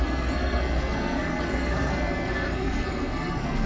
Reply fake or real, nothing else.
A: fake